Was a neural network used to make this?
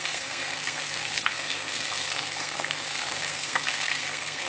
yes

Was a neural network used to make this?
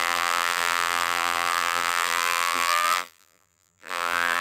yes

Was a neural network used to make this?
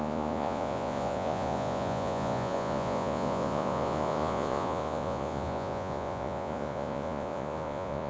yes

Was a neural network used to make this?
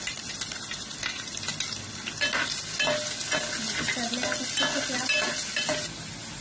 no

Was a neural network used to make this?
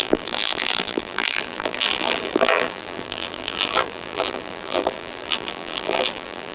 yes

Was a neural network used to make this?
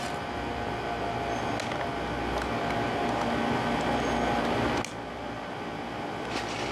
no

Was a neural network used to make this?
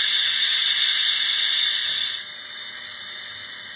no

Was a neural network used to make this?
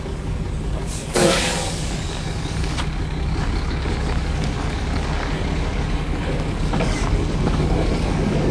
yes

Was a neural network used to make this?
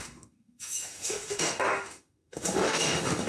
yes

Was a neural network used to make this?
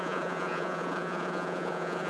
yes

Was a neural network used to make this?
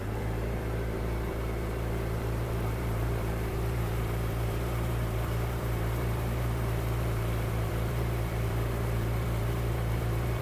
yes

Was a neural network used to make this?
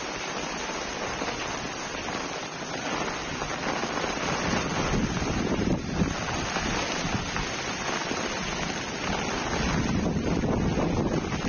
no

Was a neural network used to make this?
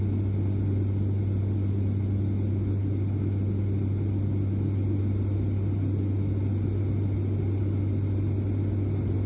no